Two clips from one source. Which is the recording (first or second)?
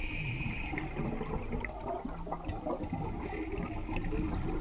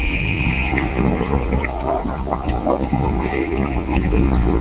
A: first